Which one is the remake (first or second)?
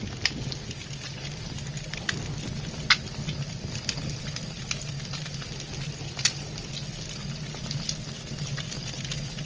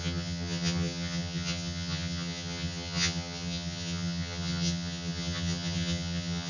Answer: second